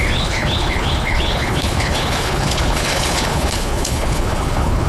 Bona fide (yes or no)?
no